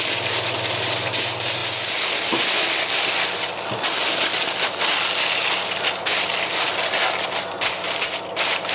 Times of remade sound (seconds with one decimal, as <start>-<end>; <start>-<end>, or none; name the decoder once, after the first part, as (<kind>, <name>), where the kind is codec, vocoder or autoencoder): none